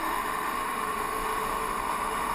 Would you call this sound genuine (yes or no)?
no